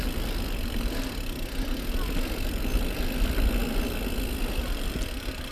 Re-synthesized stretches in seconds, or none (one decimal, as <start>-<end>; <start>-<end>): none